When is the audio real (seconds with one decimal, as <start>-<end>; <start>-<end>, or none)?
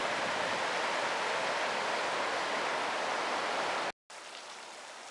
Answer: 0.0-5.1